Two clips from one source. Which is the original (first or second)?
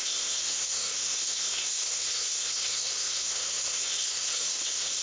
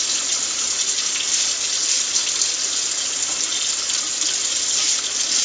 second